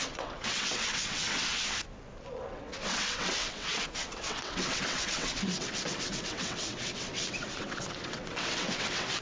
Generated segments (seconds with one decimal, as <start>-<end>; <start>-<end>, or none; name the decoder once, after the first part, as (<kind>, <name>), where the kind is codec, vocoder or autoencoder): 0.0-1.5 (vocoder, WaveNeXt); 2.5-9.2